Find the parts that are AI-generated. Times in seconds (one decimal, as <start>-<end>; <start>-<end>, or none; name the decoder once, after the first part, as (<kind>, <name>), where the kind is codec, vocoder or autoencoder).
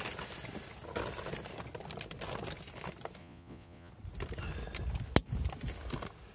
3.2-3.9 (vocoder, Vocos)